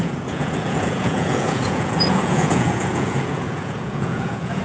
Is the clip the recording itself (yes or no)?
no